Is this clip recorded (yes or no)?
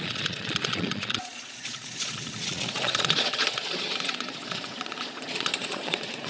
no